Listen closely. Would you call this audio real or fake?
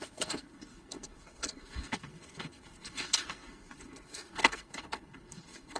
fake